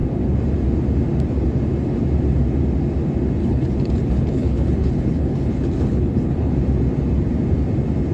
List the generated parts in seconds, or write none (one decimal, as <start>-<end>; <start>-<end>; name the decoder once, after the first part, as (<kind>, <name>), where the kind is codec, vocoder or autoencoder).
3.4-6.5 (codec, HILCodec)